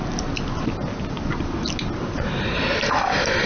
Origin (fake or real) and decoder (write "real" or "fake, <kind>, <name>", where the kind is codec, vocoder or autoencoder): real